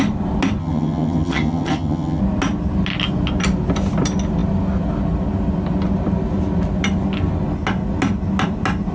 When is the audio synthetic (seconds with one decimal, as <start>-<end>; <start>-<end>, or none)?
0.6-2.2